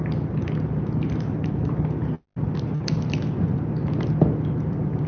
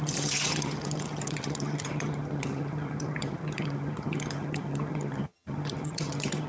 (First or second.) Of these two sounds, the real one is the first